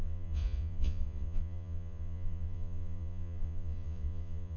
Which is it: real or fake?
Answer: fake